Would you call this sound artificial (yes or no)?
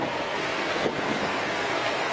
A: yes